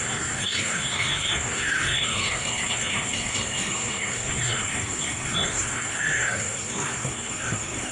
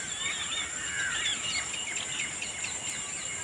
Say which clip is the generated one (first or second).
first